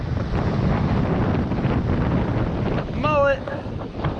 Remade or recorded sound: recorded